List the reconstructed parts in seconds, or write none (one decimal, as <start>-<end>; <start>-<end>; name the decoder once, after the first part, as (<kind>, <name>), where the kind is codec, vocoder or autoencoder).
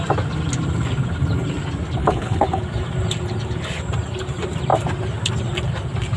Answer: 2.0-2.6 (codec, HILCodec)